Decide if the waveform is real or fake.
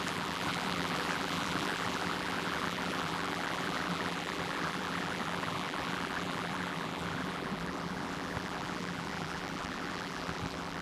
fake